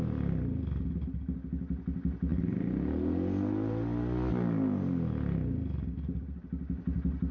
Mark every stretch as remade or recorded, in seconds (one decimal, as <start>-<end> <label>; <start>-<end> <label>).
0.0-7.3 recorded